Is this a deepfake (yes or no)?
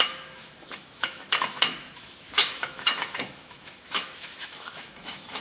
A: yes